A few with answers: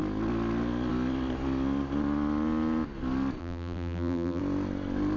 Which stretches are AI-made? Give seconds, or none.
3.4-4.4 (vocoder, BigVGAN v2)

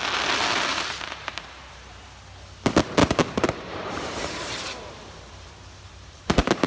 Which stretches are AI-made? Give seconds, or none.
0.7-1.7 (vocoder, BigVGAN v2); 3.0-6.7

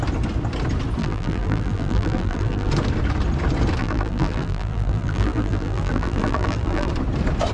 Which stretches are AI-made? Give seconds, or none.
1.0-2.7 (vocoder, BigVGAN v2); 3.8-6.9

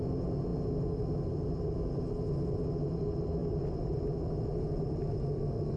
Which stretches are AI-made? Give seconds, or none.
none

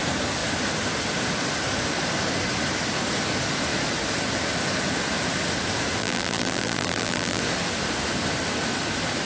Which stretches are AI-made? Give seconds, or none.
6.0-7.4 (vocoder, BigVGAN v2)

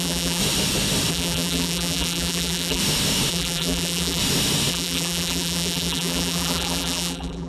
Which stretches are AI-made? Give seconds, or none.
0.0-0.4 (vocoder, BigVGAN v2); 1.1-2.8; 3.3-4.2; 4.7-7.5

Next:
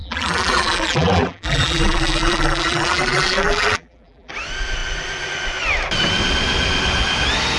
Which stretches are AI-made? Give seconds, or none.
0.0-4.3 (vocoder, BigVGAN v2)

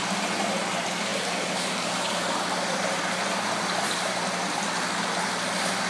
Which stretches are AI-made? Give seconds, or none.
1.1-4.6 (vocoder, BigVGAN v2)